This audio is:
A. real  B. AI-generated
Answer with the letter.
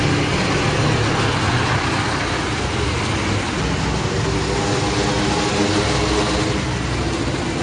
A